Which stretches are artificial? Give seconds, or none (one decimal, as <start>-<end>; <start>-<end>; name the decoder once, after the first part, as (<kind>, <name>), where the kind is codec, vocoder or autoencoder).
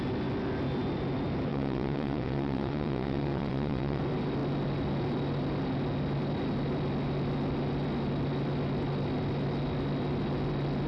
1.5-4.0 (vocoder, WaveNeXt)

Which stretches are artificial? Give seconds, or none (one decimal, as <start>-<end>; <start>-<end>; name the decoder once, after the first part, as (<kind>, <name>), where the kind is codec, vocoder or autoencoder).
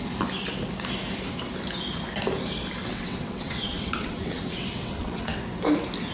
2.8-5.4 (vocoder, WaveNeXt)